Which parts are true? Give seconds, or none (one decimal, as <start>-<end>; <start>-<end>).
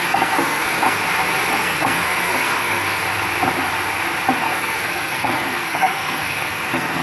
1.0-1.5; 3.0-4.4